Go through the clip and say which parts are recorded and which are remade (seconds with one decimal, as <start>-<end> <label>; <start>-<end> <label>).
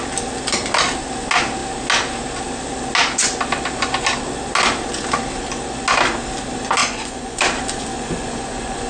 0.0-6.8 recorded; 6.8-7.4 remade; 7.4-7.9 recorded; 7.9-8.9 remade